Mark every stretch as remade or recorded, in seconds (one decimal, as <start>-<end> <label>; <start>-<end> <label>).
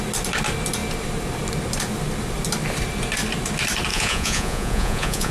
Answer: 0.0-3.9 recorded; 3.9-5.3 remade